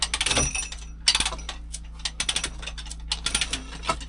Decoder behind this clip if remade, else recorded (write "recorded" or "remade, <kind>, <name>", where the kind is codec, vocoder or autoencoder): recorded